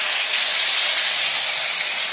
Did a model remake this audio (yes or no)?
no